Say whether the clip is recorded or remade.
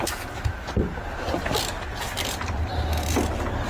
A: recorded